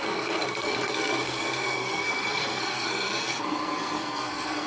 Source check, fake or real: fake